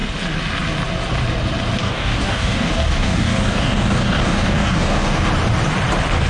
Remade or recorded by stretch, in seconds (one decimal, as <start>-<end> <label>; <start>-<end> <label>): 0.0-1.8 recorded; 1.8-5.3 remade; 5.3-6.3 recorded